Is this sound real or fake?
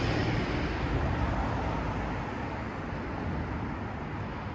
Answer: real